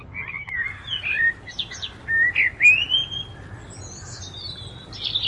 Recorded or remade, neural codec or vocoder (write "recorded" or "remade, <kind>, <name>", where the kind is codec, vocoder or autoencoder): recorded